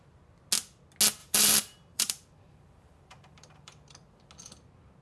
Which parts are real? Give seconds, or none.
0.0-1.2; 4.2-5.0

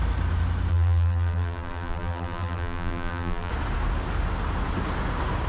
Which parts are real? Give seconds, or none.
0.0-0.7; 3.5-5.5

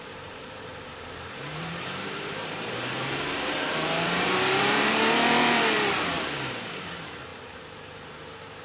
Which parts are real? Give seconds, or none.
none

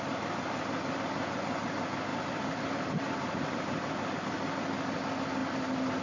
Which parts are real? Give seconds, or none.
0.0-2.1; 4.1-6.0